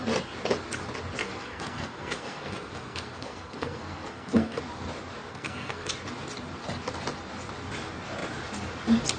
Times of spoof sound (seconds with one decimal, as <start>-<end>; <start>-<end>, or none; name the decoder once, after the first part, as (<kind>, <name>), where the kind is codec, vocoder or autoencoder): 1.2-4.6 (codec, SNAC); 5.3-5.9